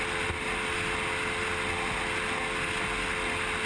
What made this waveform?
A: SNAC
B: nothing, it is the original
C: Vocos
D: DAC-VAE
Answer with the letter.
B